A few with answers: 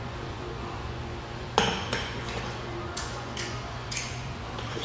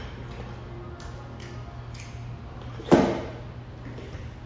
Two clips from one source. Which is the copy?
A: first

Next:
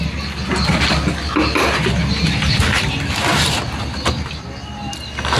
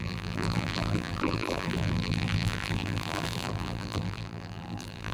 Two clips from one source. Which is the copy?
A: second